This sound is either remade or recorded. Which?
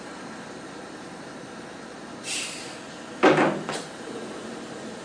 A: remade